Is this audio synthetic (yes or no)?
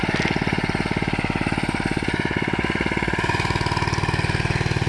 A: no